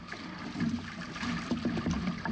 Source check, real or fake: real